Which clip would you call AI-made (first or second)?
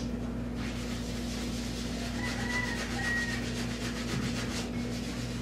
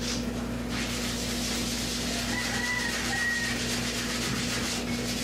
second